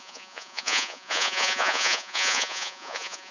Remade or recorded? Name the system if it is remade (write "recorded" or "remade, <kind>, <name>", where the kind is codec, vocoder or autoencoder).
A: remade, vocoder, Vocos